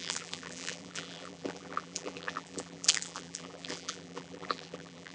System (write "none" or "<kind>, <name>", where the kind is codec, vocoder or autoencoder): vocoder, BigVGAN v2